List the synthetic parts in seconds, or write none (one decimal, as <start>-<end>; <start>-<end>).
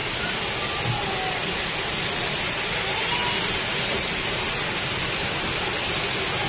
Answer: none